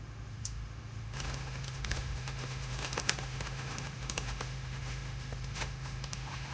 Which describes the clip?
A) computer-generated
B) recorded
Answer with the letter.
A